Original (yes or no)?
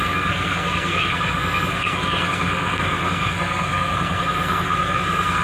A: no